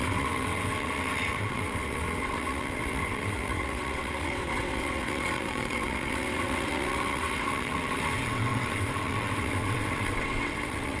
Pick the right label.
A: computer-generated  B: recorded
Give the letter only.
A